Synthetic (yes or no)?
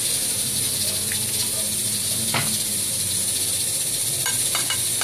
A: no